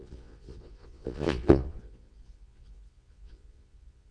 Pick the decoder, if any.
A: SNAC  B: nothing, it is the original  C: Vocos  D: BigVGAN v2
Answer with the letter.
C